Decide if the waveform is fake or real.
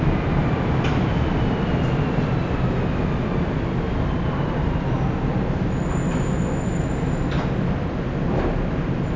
real